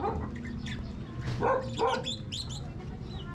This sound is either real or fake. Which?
real